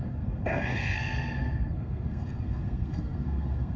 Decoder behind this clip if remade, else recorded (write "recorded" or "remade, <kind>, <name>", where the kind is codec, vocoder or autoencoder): remade, codec, SNAC